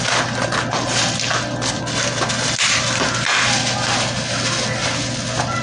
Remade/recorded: recorded